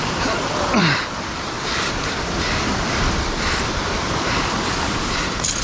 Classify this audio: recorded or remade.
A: remade